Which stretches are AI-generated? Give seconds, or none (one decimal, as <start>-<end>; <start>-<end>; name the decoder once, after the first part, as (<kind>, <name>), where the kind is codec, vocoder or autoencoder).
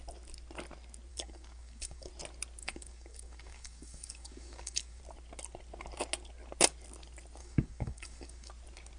1.1-2.1 (codec, DAC); 2.6-5.0; 7.4-8.5